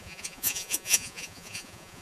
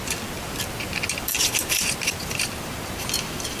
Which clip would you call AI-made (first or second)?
first